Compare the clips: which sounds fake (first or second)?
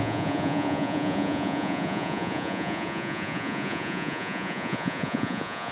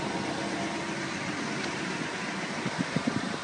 first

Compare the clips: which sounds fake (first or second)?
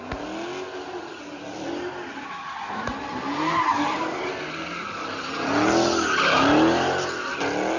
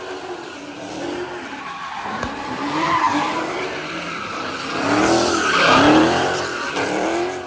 second